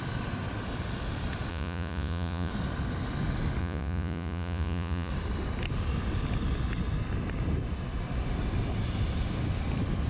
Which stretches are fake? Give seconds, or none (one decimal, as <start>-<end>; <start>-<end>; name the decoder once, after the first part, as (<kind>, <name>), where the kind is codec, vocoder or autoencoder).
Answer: 1.5-2.5 (vocoder, Vocos); 3.6-5.1